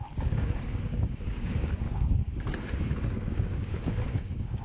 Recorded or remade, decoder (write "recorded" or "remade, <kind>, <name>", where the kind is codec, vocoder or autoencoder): remade, codec, DAC